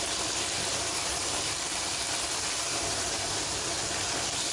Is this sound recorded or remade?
recorded